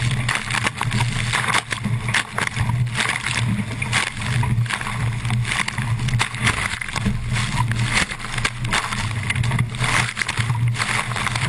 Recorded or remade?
recorded